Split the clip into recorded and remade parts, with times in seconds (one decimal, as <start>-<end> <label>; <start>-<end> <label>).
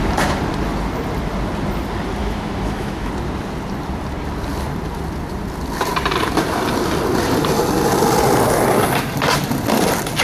0.0-2.2 recorded; 2.2-3.1 remade; 3.1-10.2 recorded